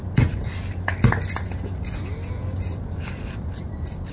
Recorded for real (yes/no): yes